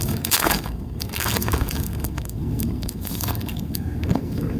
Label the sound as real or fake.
fake